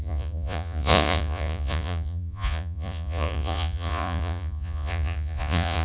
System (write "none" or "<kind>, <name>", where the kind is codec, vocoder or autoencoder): vocoder, Vocos